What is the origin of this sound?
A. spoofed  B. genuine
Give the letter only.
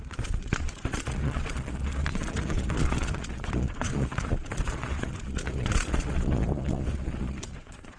A